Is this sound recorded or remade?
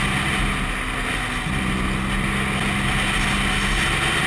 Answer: recorded